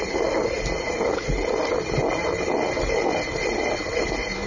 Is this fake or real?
real